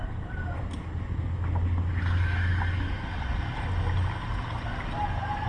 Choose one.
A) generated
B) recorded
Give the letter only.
B